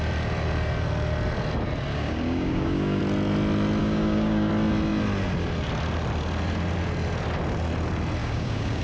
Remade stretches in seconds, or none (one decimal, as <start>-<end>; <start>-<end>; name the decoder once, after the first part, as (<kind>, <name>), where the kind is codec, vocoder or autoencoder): 1.9-3.0 (codec, DAC); 3.8-4.5; 8.2-8.8